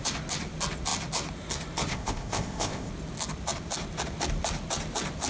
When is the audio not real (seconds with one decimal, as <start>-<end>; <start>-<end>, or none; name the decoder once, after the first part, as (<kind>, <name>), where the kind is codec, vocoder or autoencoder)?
1.9-2.9 (codec, ZipCodec)

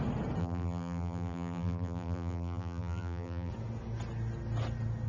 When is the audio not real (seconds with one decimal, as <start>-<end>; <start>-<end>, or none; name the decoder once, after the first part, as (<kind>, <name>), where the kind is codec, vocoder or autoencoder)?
0.4-3.5 (vocoder, BigVGAN v2)

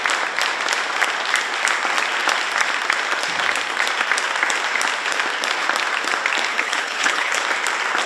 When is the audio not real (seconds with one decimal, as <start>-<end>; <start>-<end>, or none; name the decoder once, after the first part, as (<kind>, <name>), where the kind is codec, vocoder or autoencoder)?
6.5-7.3 (codec, HILCodec)

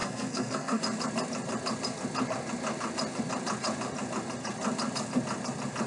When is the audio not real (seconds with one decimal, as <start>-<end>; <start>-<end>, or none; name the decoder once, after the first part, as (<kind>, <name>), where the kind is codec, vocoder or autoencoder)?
0.0-0.8 (codec, SNAC)

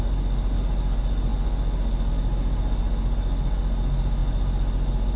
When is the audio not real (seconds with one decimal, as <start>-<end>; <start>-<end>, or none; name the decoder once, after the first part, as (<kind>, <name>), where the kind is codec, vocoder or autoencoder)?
none

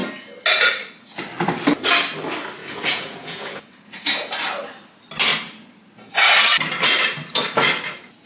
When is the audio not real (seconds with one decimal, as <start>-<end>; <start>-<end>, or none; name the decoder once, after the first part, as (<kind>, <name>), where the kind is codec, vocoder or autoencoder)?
2.6-4.3 (vocoder, Vocos)

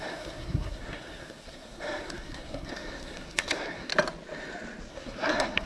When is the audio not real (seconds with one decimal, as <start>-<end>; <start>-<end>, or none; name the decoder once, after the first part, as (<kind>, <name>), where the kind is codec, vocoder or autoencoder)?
0.0-3.9 (codec, SNAC); 4.9-5.7